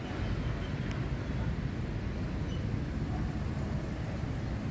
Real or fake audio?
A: real